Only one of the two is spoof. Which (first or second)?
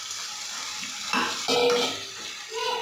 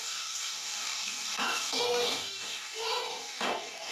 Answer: second